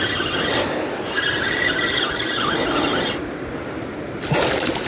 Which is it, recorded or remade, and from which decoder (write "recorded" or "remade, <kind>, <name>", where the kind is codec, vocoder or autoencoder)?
recorded